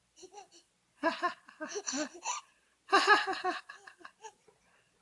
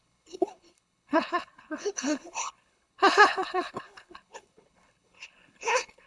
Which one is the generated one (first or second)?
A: second